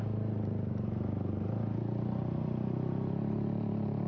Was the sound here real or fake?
real